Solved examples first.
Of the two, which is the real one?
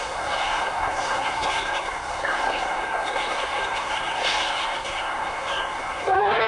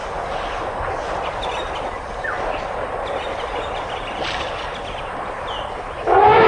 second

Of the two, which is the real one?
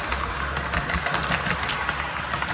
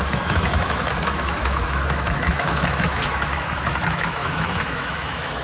first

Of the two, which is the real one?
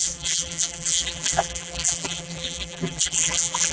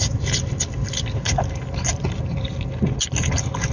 second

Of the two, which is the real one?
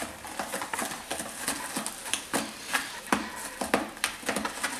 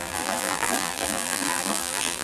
first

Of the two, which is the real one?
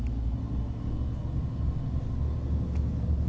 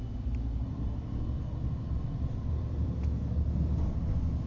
first